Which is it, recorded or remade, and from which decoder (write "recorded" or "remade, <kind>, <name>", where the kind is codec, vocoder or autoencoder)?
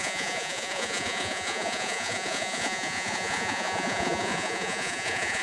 remade, vocoder, Vocos